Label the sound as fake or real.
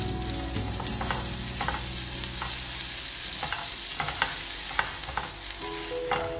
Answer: real